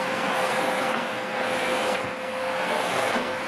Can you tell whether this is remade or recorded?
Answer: remade